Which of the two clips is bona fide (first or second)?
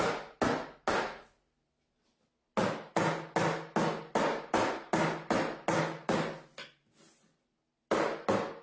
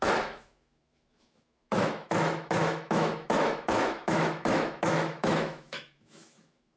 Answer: first